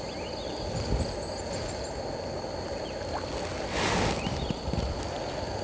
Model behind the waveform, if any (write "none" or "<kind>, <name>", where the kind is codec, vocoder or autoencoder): none